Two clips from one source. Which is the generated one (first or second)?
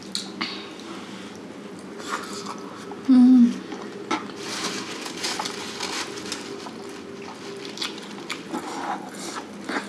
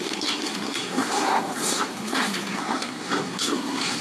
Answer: second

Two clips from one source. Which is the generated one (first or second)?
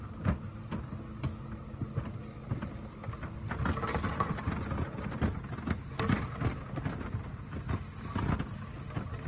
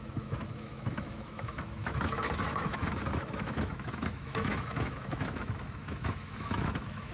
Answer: second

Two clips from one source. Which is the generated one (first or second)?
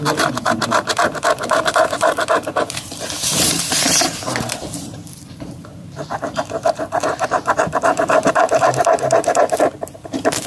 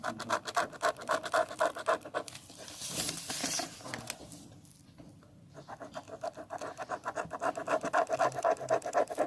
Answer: first